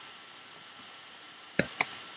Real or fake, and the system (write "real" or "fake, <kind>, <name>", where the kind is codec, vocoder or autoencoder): real